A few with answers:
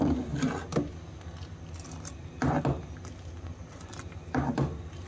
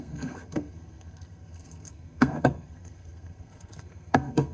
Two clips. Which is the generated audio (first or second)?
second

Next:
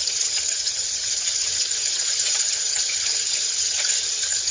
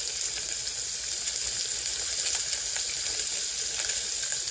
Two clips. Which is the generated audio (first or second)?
first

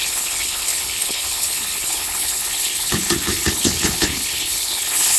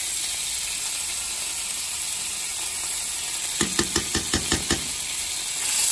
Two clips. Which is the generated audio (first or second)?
first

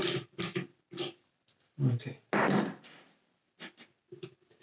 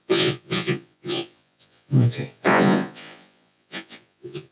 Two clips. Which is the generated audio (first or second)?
second